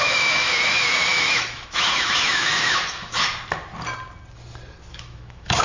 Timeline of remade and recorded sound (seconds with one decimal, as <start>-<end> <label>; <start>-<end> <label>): 0.0-3.3 remade; 3.3-4.9 recorded; 4.9-5.6 remade